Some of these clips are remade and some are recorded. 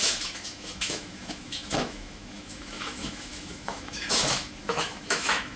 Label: remade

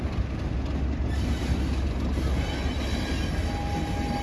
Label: recorded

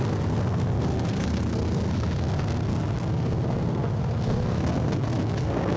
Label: remade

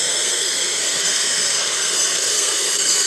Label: remade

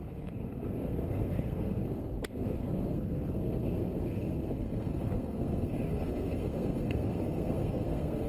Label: remade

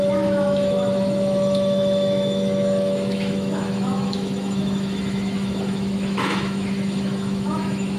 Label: remade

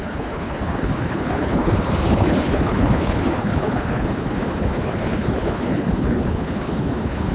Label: remade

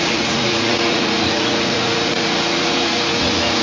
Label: remade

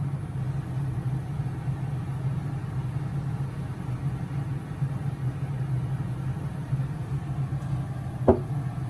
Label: recorded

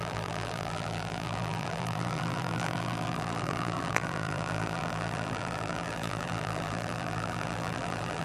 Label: remade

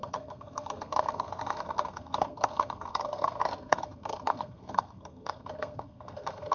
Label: remade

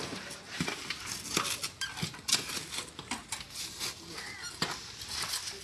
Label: recorded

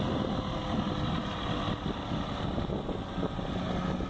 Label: recorded